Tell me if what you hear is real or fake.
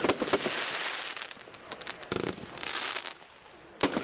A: real